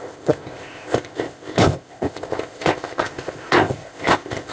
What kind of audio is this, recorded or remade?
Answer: remade